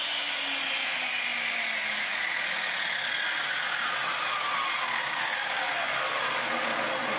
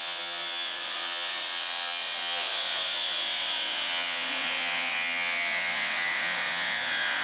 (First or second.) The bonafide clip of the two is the first